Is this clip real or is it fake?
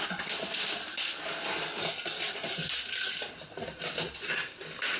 real